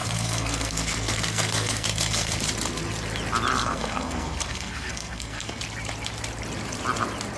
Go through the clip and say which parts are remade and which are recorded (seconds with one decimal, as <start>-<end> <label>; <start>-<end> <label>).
0.0-2.4 remade; 2.4-3.6 recorded; 3.6-5.6 remade; 5.6-7.4 recorded